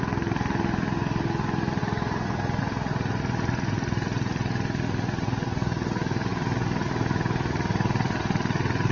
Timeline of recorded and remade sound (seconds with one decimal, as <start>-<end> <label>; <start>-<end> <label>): 0.0-8.9 recorded